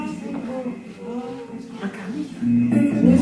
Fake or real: real